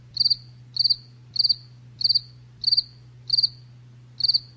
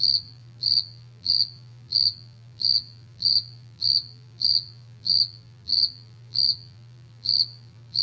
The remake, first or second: second